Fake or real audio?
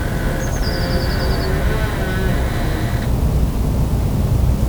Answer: real